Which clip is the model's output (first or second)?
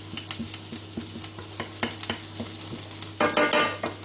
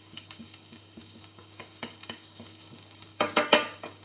second